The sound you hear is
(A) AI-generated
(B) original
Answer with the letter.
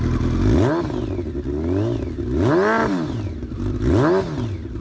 B